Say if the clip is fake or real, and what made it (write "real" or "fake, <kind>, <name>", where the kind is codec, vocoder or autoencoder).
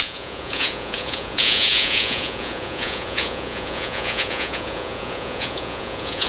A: fake, vocoder, Vocos